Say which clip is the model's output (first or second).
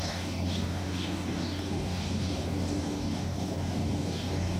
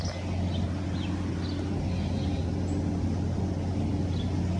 first